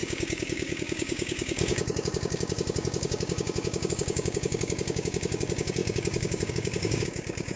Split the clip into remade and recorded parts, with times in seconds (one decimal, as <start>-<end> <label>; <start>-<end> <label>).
0.0-7.6 remade